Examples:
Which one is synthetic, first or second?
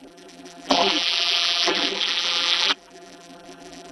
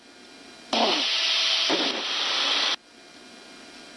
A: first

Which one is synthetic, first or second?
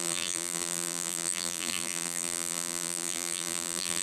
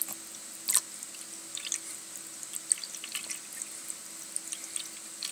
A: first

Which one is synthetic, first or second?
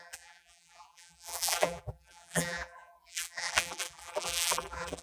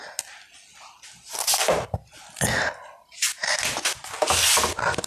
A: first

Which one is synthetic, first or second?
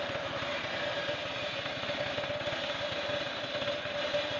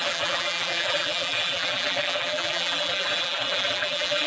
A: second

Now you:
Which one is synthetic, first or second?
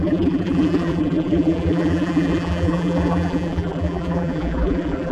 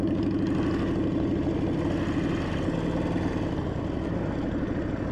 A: first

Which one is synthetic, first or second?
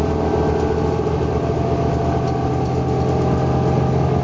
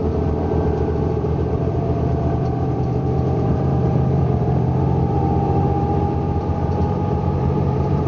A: second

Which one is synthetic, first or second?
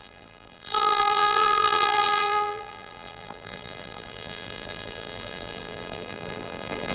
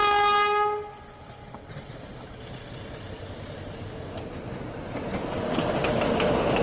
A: first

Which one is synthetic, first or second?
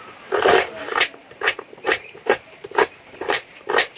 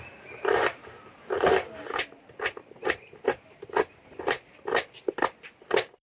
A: first